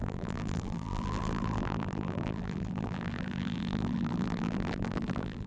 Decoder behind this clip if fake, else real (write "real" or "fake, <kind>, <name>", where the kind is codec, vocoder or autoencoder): fake, vocoder, BigVGAN v2